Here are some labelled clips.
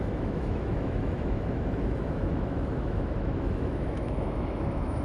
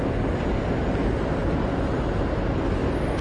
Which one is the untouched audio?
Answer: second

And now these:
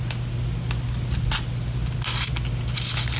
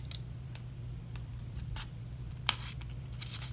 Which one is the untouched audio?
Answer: first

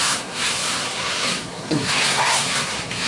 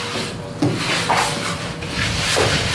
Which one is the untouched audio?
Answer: second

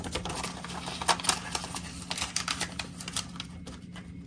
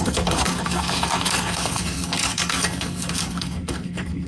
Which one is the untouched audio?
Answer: first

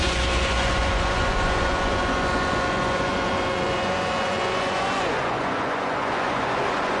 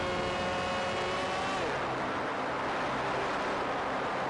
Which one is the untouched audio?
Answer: second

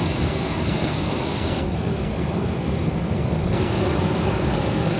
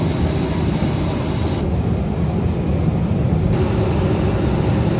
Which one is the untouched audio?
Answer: second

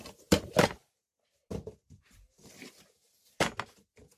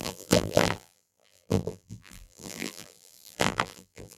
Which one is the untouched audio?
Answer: first